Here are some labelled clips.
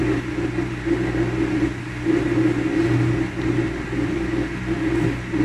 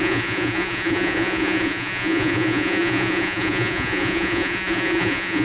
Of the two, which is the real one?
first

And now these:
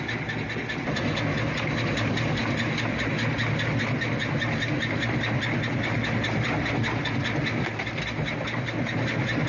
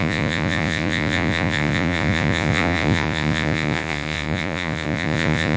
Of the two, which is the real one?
first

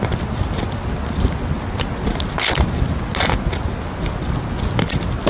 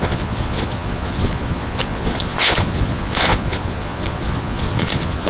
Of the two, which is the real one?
first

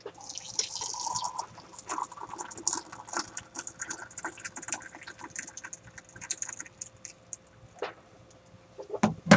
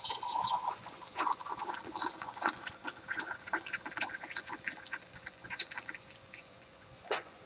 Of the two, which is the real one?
first